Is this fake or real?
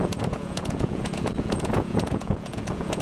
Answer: fake